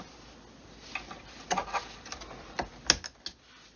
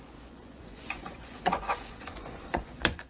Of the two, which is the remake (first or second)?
second